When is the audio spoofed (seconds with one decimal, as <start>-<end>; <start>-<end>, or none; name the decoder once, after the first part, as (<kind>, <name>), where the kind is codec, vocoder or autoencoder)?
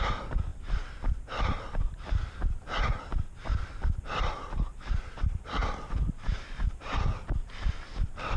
0.5-2.4 (vocoder, BigVGAN v2); 3.5-5.0; 5.6-6.8